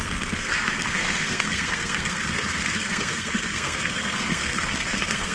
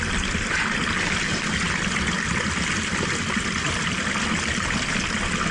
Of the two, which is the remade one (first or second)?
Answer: first